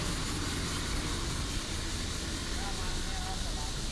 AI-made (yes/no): no